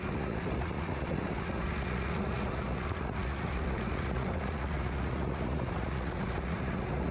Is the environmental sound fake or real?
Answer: fake